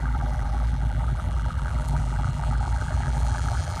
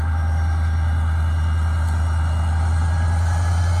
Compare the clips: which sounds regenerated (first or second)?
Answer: first